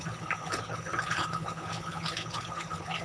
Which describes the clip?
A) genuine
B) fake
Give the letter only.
B